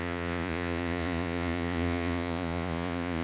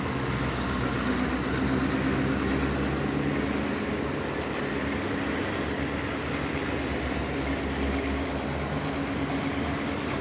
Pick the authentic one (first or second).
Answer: second